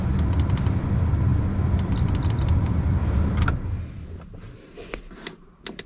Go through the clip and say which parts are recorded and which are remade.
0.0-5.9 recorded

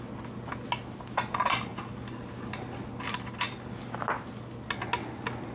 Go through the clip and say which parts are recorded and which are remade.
0.0-5.5 recorded

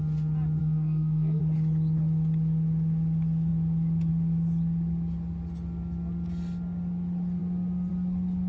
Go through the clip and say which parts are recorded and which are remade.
0.0-0.6 recorded; 0.6-1.4 remade; 1.4-8.5 recorded

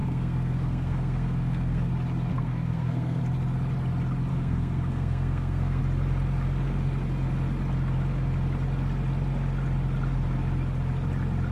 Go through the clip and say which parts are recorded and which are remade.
0.0-1.9 remade; 1.9-2.3 recorded; 2.3-3.2 remade; 3.2-4.3 recorded; 4.3-5.8 remade; 5.8-11.5 recorded